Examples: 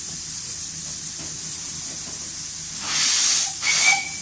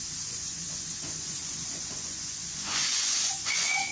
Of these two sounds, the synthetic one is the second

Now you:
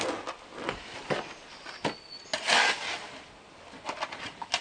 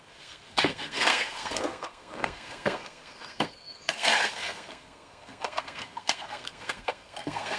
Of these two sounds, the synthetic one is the second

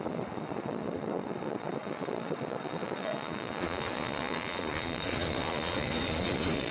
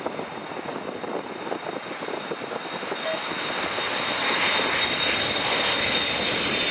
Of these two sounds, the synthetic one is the first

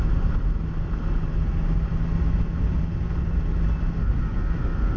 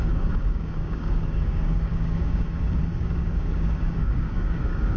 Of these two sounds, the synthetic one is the second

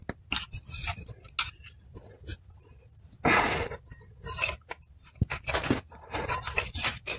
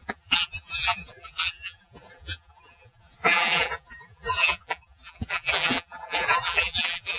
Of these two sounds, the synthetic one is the second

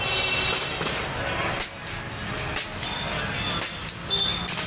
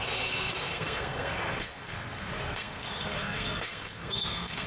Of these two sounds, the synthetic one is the second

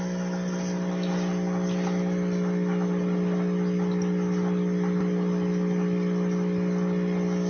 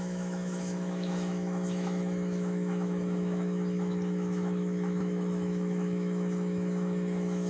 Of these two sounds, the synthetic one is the second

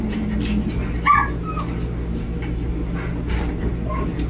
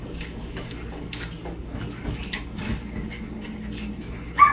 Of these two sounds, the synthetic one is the second